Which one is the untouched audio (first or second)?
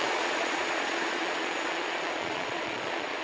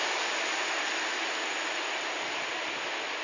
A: second